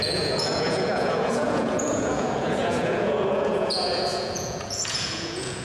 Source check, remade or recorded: remade